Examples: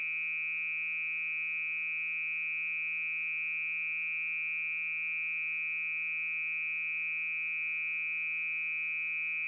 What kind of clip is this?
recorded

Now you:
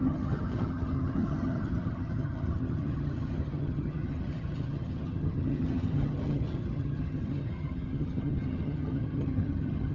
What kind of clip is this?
remade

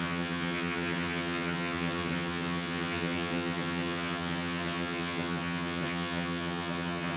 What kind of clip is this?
remade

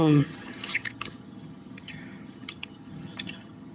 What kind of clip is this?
remade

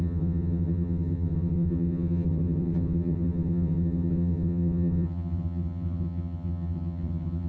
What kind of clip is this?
remade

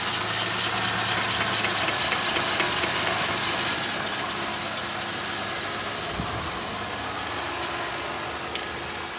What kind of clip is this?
recorded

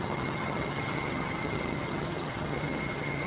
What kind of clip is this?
remade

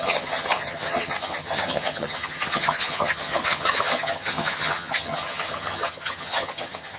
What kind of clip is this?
remade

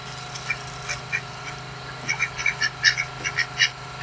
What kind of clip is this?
recorded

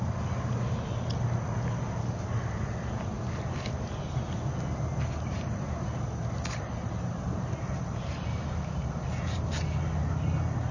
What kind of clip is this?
recorded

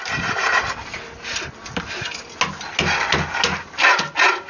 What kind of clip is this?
recorded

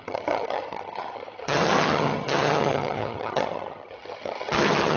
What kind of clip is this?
remade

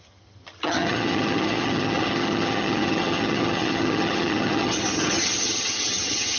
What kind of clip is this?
remade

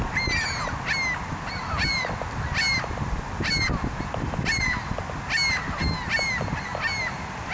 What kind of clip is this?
recorded